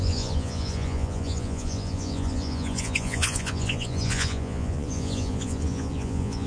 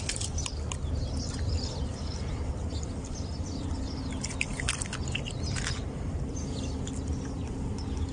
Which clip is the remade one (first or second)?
first